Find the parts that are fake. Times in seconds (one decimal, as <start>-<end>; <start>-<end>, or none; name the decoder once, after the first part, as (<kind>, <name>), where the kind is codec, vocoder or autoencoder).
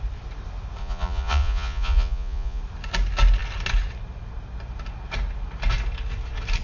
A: 0.8-2.6 (vocoder, Vocos)